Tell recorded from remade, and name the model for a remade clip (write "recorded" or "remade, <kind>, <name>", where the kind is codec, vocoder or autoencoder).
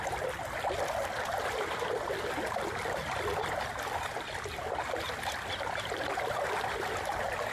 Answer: remade, vocoder, BigVGAN v2